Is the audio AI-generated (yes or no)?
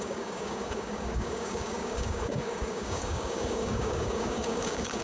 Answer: yes